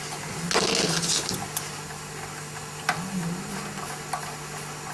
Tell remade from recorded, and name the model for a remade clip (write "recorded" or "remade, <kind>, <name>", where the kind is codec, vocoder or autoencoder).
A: recorded